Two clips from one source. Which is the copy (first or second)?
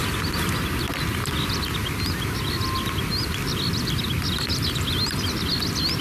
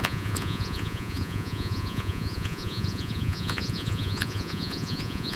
second